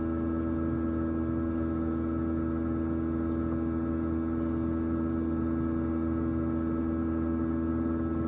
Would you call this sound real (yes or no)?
yes